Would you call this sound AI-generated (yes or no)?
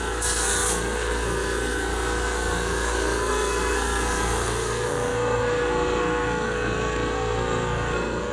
yes